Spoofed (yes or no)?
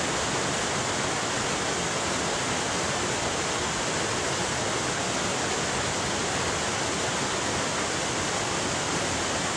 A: no